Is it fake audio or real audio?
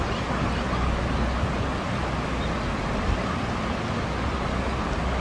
real